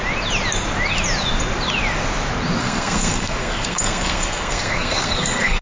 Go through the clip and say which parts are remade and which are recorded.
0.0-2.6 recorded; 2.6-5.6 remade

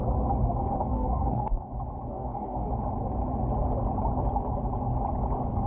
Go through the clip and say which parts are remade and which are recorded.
0.0-0.9 recorded; 0.9-1.7 remade; 1.7-2.1 recorded; 2.1-2.7 remade; 2.7-5.7 recorded

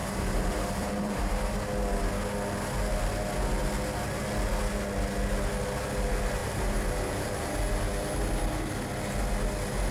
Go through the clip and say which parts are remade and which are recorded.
0.0-1.2 remade; 1.2-6.4 recorded; 6.4-7.5 remade; 7.5-9.9 recorded

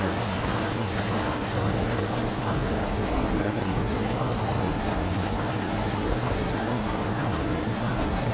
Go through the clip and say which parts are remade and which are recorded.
0.0-8.3 remade

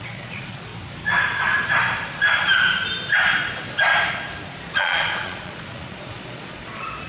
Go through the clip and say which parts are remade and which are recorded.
0.0-0.7 remade; 0.7-4.6 recorded; 4.6-7.1 remade

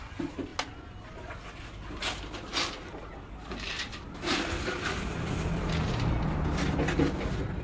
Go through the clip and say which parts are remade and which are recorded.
0.0-7.6 recorded